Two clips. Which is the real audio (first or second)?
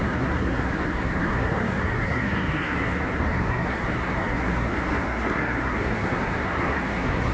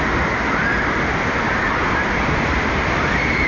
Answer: second